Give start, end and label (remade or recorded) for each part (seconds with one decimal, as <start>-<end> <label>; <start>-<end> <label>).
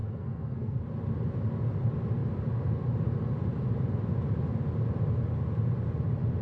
0.0-0.8 remade; 0.8-6.4 recorded